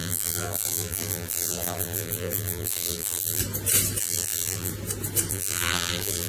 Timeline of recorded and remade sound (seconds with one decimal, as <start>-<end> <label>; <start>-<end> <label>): 0.0-3.4 remade; 3.4-4.0 recorded; 4.0-4.7 remade; 4.7-5.3 recorded; 5.3-6.3 remade